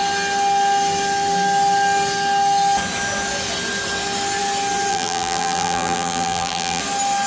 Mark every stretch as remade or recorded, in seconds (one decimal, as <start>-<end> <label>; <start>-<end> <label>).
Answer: 0.0-4.9 recorded; 4.9-6.8 remade; 6.8-7.3 recorded